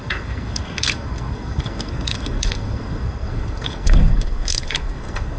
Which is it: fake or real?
fake